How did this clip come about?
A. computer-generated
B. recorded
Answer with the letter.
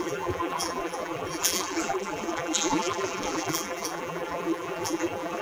A